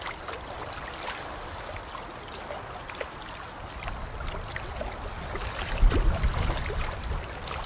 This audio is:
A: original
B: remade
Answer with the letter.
A